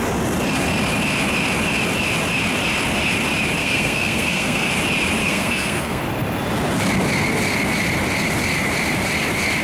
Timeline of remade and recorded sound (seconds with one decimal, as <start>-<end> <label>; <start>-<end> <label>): 0.0-3.6 recorded; 3.6-4.7 remade; 4.7-5.2 recorded; 5.2-6.0 remade; 6.0-9.6 recorded